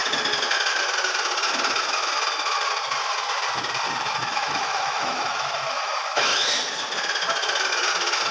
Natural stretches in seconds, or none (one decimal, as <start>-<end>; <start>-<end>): 0.0-4.0; 6.3-8.3